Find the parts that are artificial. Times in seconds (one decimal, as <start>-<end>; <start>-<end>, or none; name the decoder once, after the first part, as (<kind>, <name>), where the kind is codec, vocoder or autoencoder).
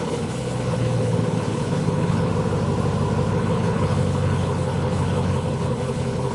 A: 0.0-2.3 (codec, HILCodec); 3.3-6.3